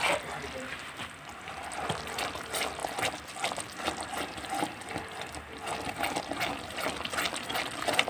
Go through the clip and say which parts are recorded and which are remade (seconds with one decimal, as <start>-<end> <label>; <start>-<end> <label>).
0.0-8.1 recorded